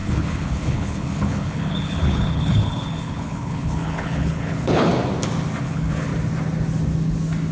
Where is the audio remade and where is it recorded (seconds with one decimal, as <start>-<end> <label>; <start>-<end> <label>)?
0.0-4.9 remade; 4.9-5.6 recorded; 5.6-6.1 remade; 6.1-7.5 recorded